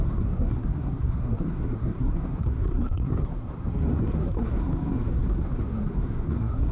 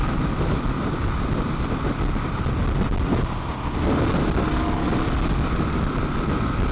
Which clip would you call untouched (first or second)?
second